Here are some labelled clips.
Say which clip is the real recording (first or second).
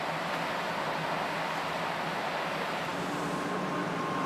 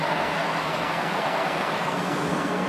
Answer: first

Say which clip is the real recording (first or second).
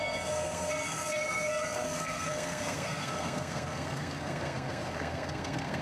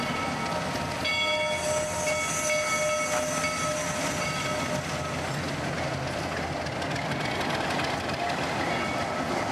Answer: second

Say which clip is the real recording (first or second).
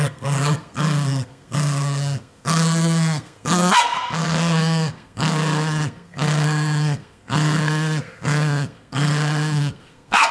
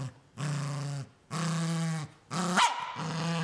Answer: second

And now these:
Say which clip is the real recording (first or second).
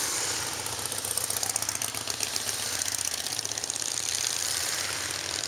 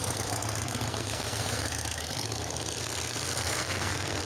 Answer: first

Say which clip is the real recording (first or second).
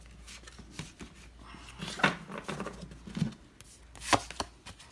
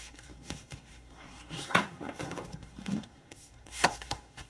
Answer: first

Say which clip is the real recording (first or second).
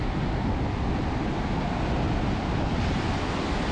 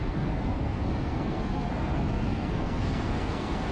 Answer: first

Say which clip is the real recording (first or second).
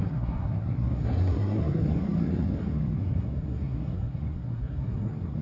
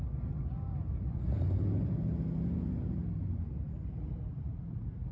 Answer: second